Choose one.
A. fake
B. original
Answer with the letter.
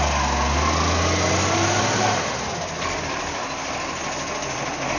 B